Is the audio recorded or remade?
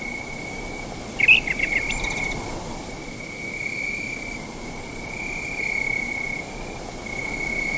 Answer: recorded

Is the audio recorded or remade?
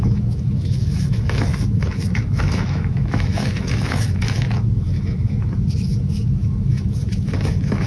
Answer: remade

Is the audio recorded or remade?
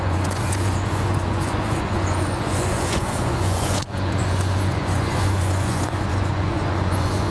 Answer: remade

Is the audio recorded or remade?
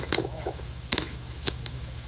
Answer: remade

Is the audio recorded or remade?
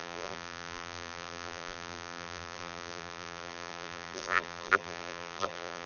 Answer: remade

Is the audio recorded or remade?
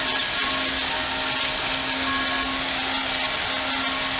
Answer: recorded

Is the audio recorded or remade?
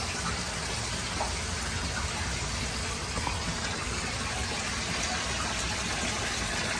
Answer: recorded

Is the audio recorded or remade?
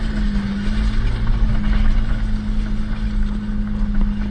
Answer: recorded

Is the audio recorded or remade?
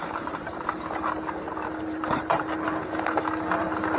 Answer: remade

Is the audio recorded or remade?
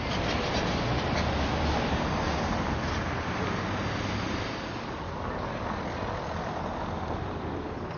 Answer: recorded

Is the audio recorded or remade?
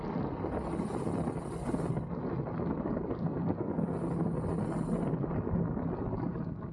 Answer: recorded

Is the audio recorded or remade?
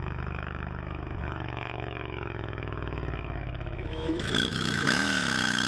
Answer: remade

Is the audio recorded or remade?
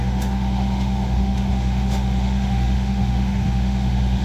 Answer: remade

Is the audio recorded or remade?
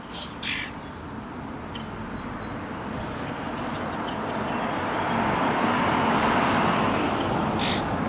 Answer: recorded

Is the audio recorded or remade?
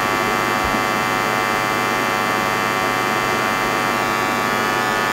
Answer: recorded